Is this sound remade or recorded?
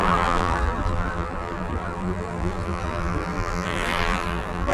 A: remade